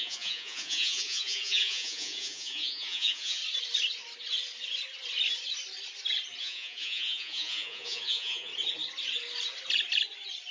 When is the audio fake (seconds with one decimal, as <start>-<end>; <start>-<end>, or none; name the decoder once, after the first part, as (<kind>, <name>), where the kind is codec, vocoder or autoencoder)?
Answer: 0.0-3.4 (vocoder, Vocos); 6.4-8.5